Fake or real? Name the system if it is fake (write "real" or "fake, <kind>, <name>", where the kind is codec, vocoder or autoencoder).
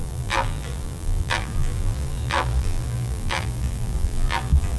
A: fake, vocoder, BigVGAN v2